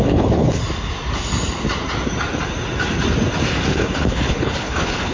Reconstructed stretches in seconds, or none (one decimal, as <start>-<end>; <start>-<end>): 0.0-0.6; 3.7-5.1